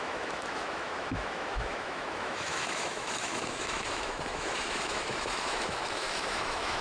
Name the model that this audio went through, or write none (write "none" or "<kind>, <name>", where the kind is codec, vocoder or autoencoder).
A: autoencoder, DAC-VAE